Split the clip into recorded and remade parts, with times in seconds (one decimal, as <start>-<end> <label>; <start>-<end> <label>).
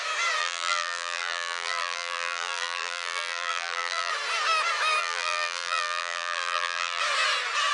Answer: 0.0-0.4 recorded; 0.4-4.1 remade; 4.1-5.0 recorded; 5.0-7.0 remade; 7.0-7.7 recorded